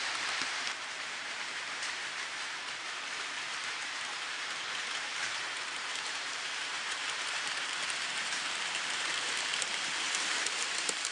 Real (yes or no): no